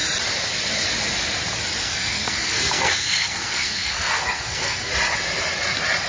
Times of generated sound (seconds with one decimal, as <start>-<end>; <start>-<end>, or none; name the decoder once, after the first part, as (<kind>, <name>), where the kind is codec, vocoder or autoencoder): 1.8-4.9 (codec, SNAC)